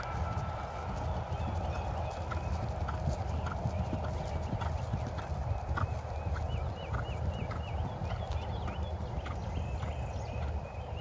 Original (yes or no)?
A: yes